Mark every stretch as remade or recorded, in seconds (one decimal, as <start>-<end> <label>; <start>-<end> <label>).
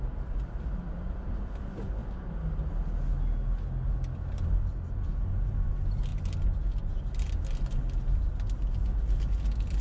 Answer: 0.0-9.8 recorded